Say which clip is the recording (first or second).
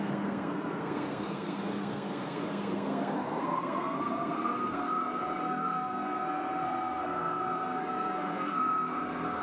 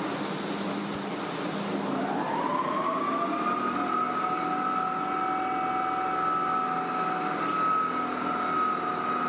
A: second